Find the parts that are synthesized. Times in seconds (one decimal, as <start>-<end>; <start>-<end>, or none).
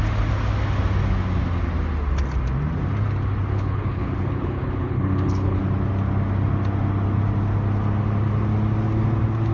3.5-5.6